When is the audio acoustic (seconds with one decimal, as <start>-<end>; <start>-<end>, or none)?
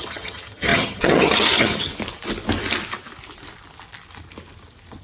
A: 1.9-5.0